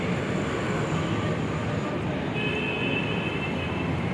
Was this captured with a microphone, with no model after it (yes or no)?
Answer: yes